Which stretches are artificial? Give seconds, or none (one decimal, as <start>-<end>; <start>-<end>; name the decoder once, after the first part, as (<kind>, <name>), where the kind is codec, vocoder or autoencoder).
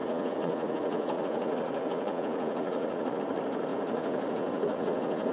0.0-3.2 (vocoder, Vocos); 3.7-5.3